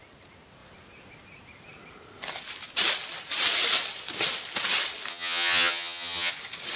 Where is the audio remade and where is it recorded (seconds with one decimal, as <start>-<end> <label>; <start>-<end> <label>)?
0.0-5.1 recorded; 5.1-6.3 remade; 6.3-6.8 recorded